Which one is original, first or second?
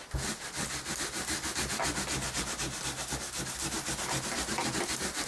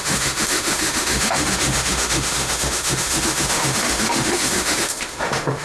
first